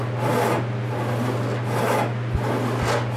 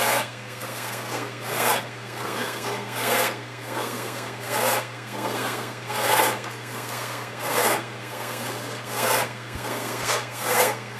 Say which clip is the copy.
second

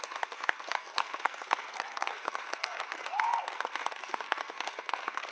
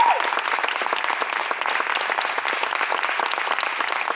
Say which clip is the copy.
first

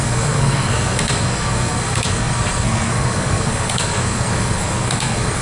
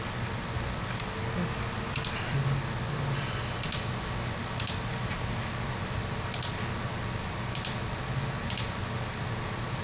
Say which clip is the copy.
first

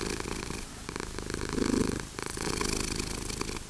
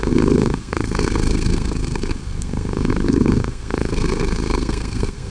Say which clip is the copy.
second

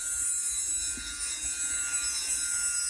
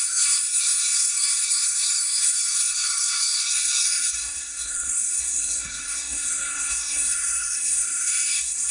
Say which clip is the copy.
second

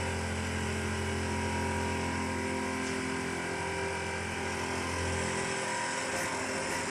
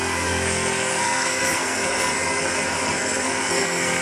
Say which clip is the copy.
second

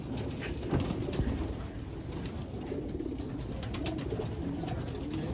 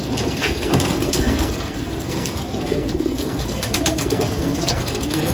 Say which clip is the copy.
second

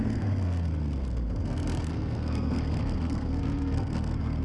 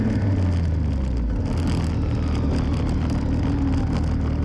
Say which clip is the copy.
first